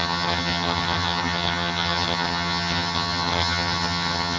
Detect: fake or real fake